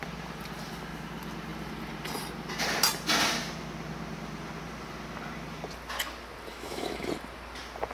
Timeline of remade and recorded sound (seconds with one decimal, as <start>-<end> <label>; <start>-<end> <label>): 0.0-6.5 recorded; 6.5-7.1 remade; 7.1-7.9 recorded